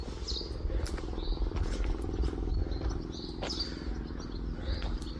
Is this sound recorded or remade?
recorded